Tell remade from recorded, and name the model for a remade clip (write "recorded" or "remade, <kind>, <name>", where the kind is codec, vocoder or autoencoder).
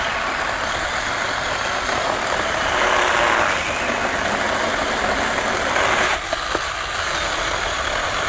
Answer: recorded